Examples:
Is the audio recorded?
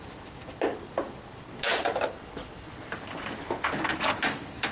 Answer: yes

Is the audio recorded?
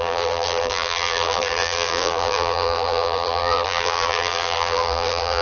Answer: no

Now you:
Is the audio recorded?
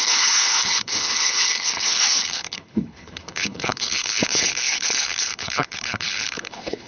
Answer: no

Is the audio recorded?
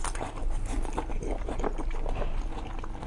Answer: yes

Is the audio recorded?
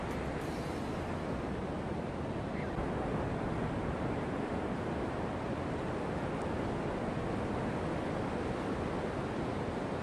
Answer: yes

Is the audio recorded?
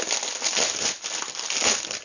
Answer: yes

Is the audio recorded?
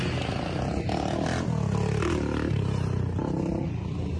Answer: yes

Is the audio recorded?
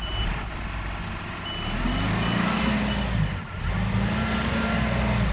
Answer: yes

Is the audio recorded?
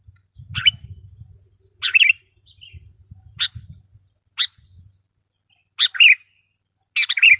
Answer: yes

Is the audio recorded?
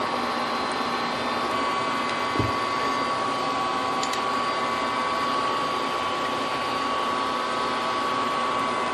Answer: yes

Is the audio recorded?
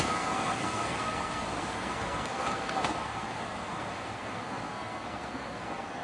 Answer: no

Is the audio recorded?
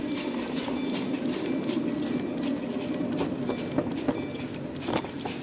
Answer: yes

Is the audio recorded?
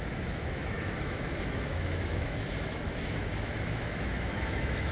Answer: no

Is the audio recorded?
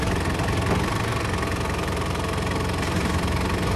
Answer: yes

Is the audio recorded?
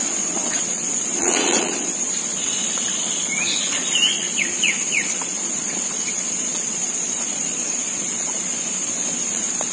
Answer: no